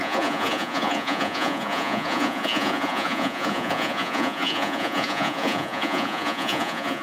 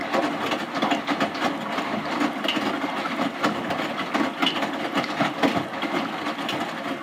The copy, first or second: first